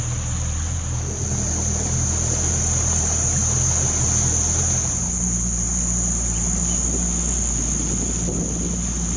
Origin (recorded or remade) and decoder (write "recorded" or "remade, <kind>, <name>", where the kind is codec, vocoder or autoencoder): recorded